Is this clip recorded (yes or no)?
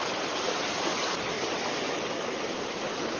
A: yes